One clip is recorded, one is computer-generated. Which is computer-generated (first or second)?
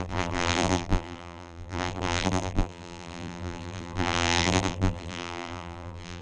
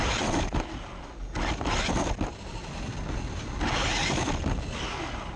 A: first